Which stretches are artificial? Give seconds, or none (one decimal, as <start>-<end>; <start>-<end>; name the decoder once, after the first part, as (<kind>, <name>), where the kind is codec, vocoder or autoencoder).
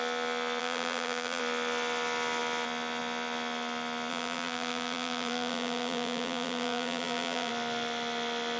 0.6-1.4 (vocoder, BigVGAN v2); 4.1-7.5